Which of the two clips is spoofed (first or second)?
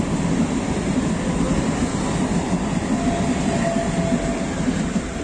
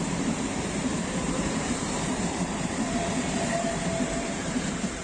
second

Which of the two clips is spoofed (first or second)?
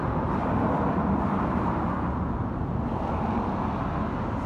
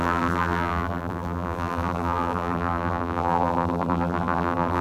second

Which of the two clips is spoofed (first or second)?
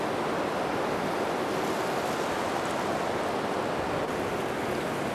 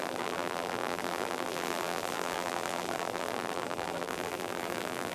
second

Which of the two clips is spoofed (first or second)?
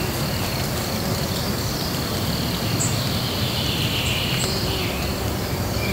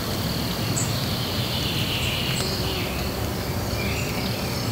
first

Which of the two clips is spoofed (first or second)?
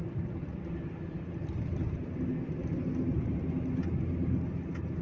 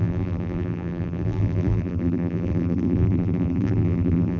second